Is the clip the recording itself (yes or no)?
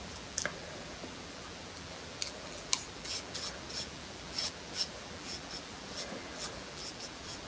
no